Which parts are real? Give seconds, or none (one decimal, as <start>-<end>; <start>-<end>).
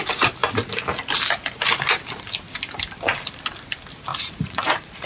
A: 0.0-4.1